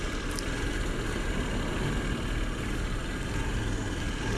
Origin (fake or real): real